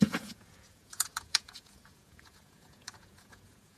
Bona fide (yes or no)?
no